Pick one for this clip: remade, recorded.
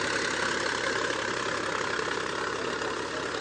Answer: recorded